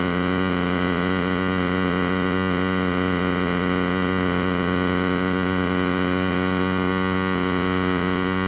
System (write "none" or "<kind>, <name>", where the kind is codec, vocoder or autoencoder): none